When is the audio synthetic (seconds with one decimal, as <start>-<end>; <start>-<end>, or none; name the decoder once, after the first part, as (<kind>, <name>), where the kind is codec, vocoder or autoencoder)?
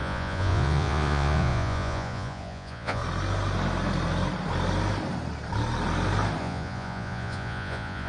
0.0-3.0 (vocoder, Vocos); 6.4-8.1